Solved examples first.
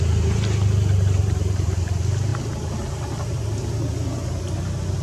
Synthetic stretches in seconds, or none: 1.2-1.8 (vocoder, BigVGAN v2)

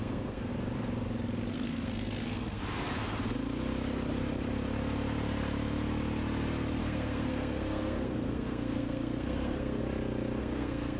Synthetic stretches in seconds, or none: 0.0-0.5 (codec, SNAC); 1.5-2.6; 6.8-9.8; 10.4-11.0

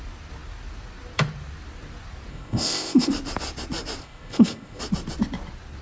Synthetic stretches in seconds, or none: 2.3-3.1 (codec, ZipCodec); 4.0-4.8

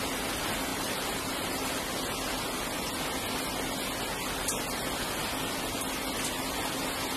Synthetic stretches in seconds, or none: 0.7-1.8 (vocoder, BigVGAN v2)

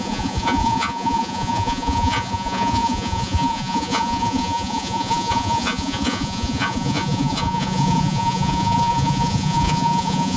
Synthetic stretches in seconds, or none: 0.0-10.4 (vocoder, Vocos)